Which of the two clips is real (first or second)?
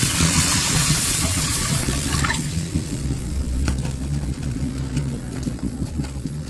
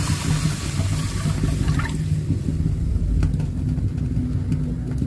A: second